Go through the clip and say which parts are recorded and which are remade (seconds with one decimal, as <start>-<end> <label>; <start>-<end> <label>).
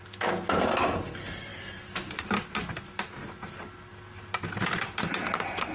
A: 0.0-5.7 recorded